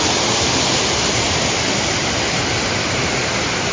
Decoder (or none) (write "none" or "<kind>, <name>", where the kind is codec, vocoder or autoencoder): none